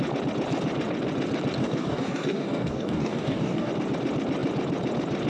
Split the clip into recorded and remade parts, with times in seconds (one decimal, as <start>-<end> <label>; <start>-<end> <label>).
0.0-1.6 recorded; 1.6-3.7 remade; 3.7-5.3 recorded

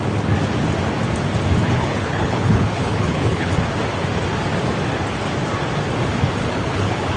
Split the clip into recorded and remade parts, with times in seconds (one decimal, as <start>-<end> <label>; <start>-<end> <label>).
0.0-1.6 recorded; 1.6-3.5 remade; 3.5-6.4 recorded; 6.4-7.2 remade

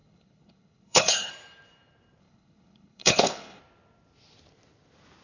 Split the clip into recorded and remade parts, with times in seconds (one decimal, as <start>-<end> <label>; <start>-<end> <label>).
0.0-1.3 remade; 1.3-2.2 recorded; 2.2-3.6 remade; 3.6-5.2 recorded